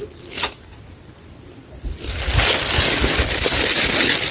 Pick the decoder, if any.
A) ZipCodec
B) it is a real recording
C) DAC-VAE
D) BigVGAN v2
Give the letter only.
B